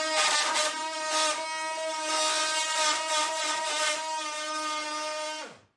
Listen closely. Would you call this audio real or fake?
real